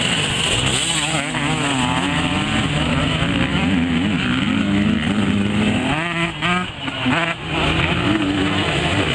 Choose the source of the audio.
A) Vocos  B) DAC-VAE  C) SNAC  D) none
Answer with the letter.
D